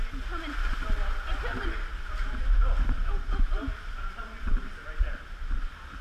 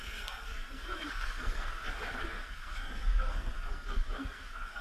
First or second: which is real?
first